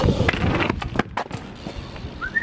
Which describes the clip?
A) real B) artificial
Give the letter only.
A